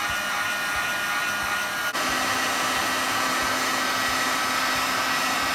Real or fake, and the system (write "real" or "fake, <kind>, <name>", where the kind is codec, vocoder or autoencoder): real